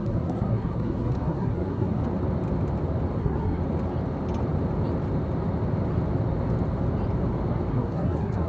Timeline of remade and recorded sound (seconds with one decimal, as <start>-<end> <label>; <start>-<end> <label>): 0.0-2.0 remade; 2.0-3.2 recorded; 3.2-3.6 remade; 3.6-7.7 recorded; 7.7-8.5 remade